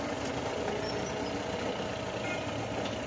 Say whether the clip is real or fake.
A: real